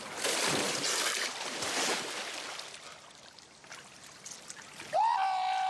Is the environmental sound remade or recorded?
recorded